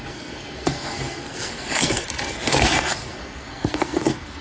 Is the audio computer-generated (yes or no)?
yes